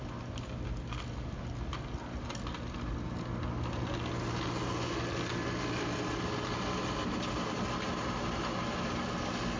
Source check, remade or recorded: recorded